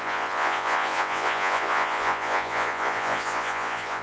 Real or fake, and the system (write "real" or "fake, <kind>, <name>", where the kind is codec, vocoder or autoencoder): fake, vocoder, Vocos